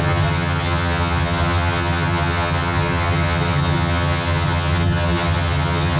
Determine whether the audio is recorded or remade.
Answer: remade